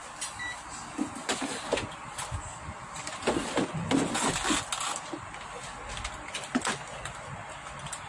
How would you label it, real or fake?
real